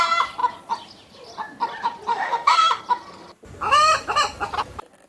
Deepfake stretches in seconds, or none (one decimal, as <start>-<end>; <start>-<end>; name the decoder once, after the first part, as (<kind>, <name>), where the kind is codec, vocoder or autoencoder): 2.1-2.8 (autoencoder, DAC-VAE)